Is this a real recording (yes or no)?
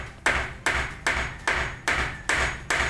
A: yes